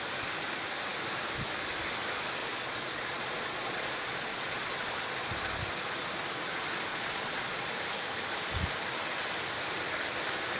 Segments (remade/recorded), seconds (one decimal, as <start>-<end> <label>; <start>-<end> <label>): 0.0-2.4 recorded; 2.4-4.9 remade; 4.9-6.9 recorded; 6.9-7.7 remade; 7.7-10.6 recorded